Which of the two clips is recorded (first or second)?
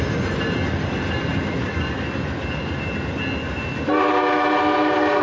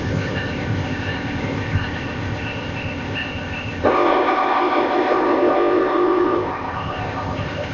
first